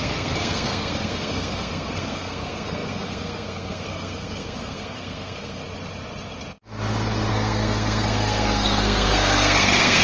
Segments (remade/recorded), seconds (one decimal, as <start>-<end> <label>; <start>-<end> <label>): 0.0-5.6 remade; 5.6-7.3 recorded; 7.3-10.0 remade